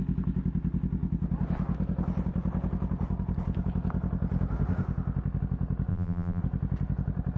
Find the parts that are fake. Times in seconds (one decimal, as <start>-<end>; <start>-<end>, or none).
5.9-6.4

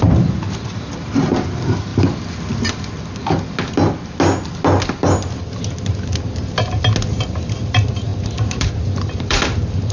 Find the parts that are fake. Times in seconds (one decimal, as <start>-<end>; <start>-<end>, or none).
0.0-1.9; 7.1-9.9

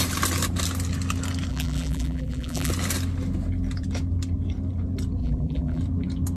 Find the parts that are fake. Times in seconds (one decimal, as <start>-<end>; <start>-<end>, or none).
1.5-2.7; 5.2-5.8